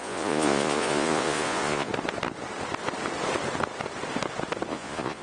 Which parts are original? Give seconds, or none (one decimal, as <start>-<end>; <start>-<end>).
1.9-4.7